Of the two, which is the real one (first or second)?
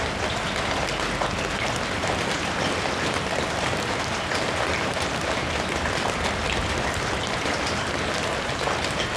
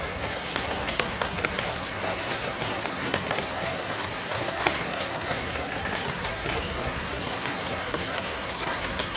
first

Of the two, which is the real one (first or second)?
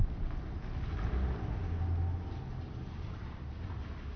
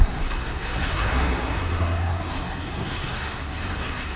first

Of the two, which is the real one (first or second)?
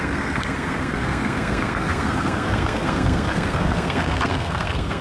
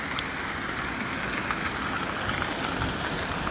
second